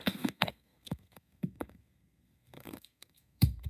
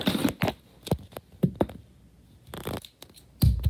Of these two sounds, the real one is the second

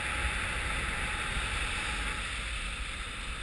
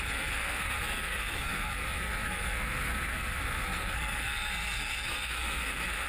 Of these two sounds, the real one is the first